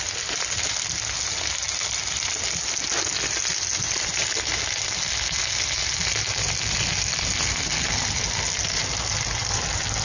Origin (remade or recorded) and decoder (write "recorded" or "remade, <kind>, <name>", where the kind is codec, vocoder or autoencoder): recorded